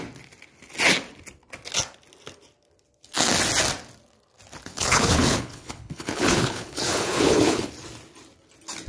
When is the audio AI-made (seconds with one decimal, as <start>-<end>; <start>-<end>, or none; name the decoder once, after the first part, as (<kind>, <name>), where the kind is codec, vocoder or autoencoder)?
4.7-7.7 (codec, HILCodec)